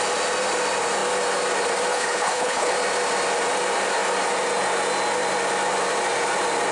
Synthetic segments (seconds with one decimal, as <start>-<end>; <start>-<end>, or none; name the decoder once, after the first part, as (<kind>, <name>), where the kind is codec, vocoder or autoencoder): 1.9-2.7 (codec, HILCodec)